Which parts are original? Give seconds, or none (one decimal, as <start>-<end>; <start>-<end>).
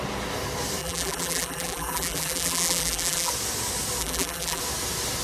0.0-0.8; 3.3-4.0; 4.6-5.2